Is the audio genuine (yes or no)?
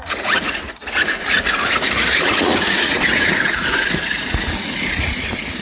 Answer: no